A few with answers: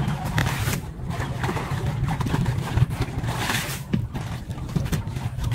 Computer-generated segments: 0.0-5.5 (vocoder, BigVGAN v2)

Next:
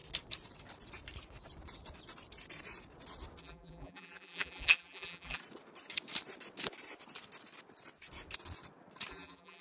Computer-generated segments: 3.4-5.4 (vocoder, BigVGAN v2); 9.1-9.6

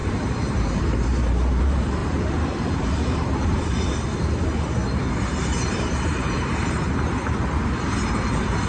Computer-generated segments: 0.0-4.8 (vocoder, BigVGAN v2); 5.6-8.7

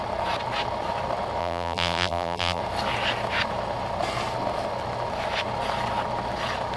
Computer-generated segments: 1.4-2.6 (vocoder, BigVGAN v2)

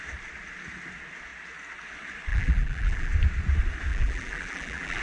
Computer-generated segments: 2.3-3.1 (vocoder, BigVGAN v2); 3.9-5.0

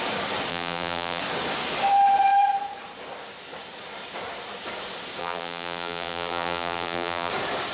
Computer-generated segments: 0.5-1.2 (vocoder, BigVGAN v2); 5.2-7.3

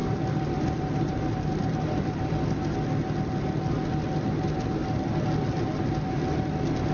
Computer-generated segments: 0.0-2.5 (vocoder, BigVGAN v2)